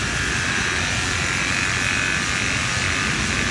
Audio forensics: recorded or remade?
recorded